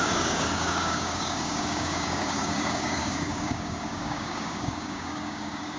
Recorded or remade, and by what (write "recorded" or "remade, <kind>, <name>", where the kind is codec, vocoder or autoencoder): remade, codec, DAC